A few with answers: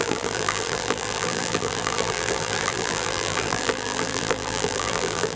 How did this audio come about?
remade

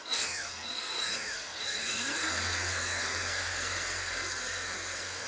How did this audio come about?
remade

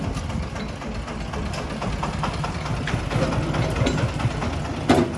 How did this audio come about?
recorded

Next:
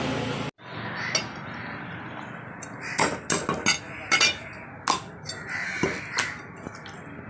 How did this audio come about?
recorded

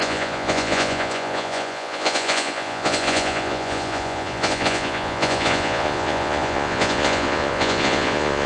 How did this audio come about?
remade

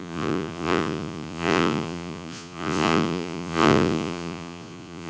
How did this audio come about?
remade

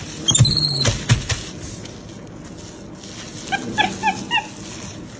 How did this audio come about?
recorded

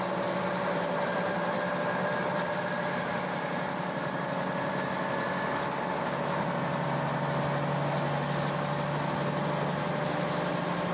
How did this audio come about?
recorded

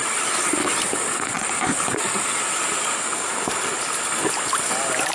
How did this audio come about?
recorded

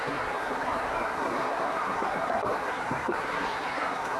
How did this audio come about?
remade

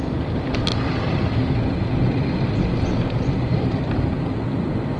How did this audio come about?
recorded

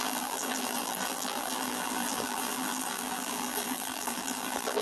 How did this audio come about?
remade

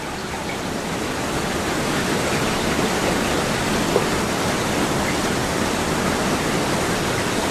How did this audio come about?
recorded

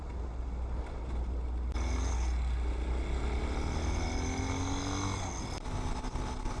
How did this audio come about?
recorded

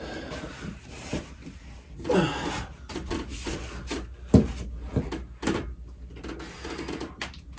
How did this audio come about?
recorded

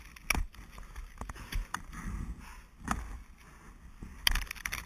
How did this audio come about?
recorded